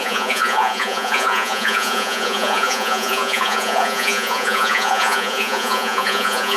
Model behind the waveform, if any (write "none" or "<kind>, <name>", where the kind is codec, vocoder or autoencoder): vocoder, Vocos